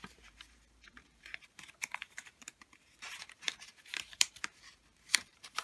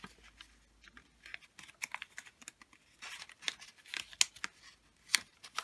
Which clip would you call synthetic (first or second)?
first